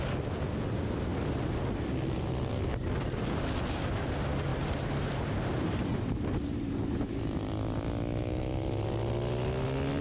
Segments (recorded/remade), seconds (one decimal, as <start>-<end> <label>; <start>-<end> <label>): 0.0-4.5 recorded; 4.5-7.5 remade; 7.5-10.0 recorded